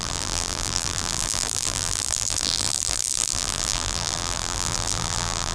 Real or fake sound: fake